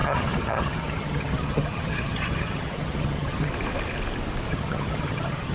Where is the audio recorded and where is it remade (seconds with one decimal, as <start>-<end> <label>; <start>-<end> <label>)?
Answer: 0.0-3.5 remade; 3.5-4.5 recorded; 4.5-5.5 remade